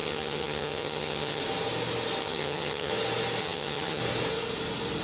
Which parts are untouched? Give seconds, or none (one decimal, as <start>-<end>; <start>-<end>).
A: 1.4-2.2; 2.9-3.4; 4.0-5.0